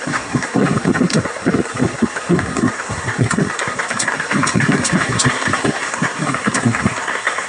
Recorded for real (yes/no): no